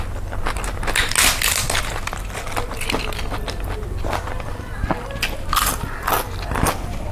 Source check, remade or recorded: recorded